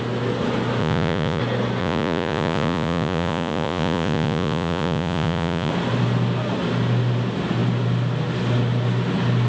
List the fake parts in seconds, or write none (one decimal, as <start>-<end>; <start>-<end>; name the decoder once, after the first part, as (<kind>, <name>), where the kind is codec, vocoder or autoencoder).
0.8-1.4 (vocoder, Vocos); 1.8-5.7